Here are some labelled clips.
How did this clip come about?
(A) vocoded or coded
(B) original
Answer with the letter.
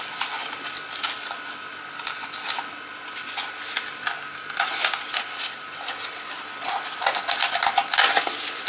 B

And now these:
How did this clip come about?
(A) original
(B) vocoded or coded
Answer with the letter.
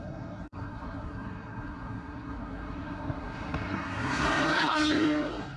B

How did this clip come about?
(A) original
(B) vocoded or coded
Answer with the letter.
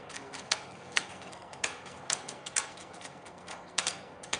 B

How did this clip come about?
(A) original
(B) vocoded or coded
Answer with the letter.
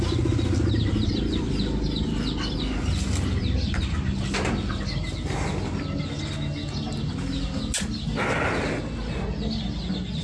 A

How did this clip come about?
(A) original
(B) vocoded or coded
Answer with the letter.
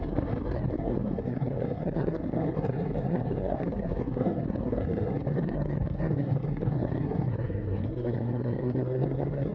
B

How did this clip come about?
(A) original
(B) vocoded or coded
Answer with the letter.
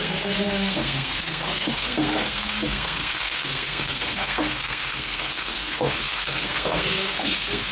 B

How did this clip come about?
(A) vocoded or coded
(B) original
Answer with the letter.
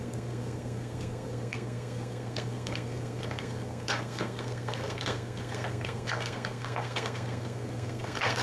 A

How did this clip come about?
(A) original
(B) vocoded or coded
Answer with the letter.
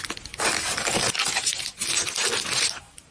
A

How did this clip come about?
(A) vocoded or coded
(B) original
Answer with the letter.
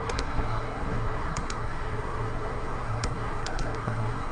A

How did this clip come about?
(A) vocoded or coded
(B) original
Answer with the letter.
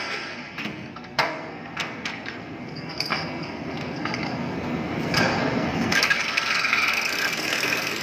A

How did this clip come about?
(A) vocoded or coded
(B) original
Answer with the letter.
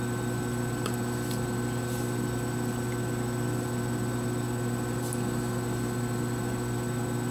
B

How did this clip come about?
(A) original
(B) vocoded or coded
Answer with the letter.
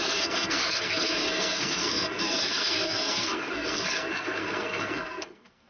B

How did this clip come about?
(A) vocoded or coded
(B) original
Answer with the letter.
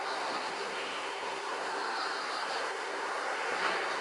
A